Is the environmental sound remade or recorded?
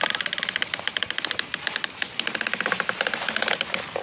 recorded